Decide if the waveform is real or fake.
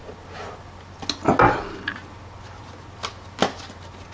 real